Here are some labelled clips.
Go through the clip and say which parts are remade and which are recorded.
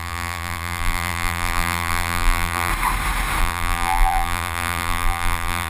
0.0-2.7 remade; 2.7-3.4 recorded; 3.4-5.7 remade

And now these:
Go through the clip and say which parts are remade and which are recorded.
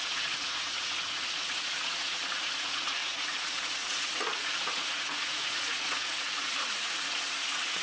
0.0-7.8 remade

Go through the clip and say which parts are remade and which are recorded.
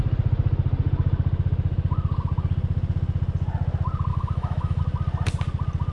0.0-4.1 recorded; 4.1-4.8 remade; 4.8-5.9 recorded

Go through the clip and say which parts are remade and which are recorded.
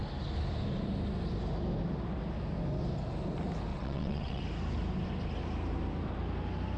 0.0-3.7 recorded; 3.7-4.4 remade; 4.4-6.8 recorded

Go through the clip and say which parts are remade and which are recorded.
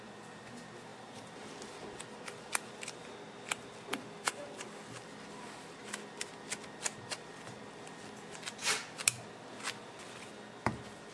0.0-0.9 recorded; 0.9-1.5 remade; 1.5-11.1 recorded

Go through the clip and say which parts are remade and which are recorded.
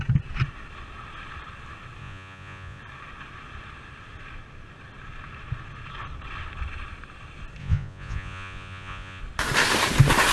0.0-2.0 recorded; 2.0-2.8 remade; 2.8-7.6 recorded; 7.6-9.2 remade; 9.2-10.3 recorded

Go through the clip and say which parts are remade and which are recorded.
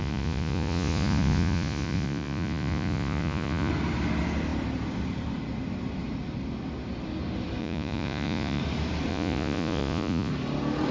0.0-3.7 remade; 3.7-7.6 recorded; 7.6-8.6 remade; 8.6-9.1 recorded; 9.1-10.3 remade; 10.3-10.9 recorded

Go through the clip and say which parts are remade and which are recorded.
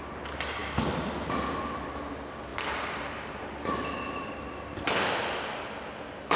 0.0-6.4 recorded